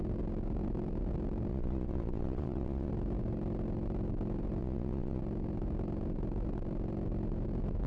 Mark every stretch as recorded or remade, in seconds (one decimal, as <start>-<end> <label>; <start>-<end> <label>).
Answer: 0.0-1.5 recorded; 1.5-2.9 remade; 2.9-4.6 recorded; 4.6-5.2 remade; 5.2-7.9 recorded